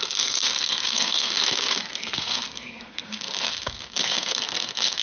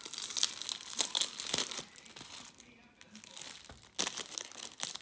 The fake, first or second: first